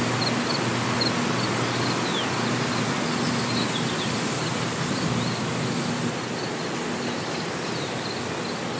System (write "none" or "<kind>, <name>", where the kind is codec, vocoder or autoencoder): none